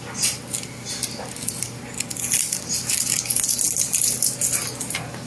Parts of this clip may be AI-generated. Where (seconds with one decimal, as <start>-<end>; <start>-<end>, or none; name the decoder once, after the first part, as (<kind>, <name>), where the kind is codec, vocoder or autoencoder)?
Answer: none